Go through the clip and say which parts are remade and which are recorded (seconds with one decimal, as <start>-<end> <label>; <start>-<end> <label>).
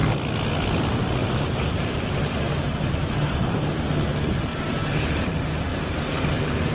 0.0-1.2 recorded; 1.2-3.9 remade; 3.9-4.5 recorded; 4.5-5.3 remade; 5.3-5.7 recorded; 5.7-6.7 remade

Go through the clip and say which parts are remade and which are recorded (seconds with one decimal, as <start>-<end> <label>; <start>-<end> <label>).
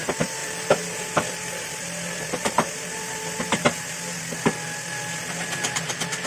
0.0-0.4 recorded; 0.4-4.2 remade; 4.2-6.3 recorded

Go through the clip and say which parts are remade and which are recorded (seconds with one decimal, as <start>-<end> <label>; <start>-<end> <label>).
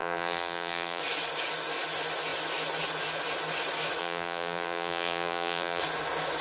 0.0-1.0 remade; 1.0-4.0 recorded; 4.0-5.8 remade; 5.8-6.4 recorded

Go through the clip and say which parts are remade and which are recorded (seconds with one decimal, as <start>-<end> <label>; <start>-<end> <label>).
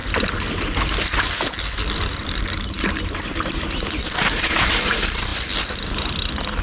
0.0-2.2 recorded; 2.2-4.7 remade; 4.7-6.6 recorded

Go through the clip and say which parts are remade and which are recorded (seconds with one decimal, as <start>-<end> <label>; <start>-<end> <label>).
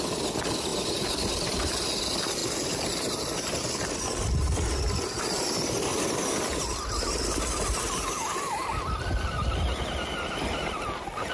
0.0-0.7 recorded; 0.7-1.6 remade; 1.6-5.9 recorded; 5.9-6.8 remade; 6.8-11.3 recorded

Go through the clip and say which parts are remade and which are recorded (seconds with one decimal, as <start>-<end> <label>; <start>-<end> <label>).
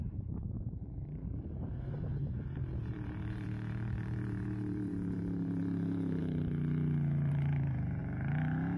0.0-6.2 remade; 6.2-7.3 recorded; 7.3-8.0 remade; 8.0-8.8 recorded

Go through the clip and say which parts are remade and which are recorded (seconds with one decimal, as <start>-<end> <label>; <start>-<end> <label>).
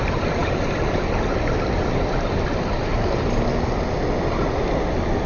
0.0-5.3 recorded